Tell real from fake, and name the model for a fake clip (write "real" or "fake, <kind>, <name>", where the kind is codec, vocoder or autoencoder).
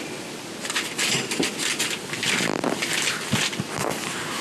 real